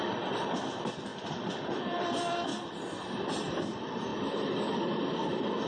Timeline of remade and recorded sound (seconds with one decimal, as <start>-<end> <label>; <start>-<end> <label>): 0.0-2.5 remade; 2.5-3.5 recorded; 3.5-4.1 remade; 4.1-5.7 recorded